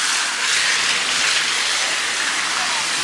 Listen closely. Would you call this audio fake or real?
real